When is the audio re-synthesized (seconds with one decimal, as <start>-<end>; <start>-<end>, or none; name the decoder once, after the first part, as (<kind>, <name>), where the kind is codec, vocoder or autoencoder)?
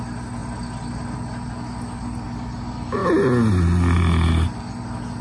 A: none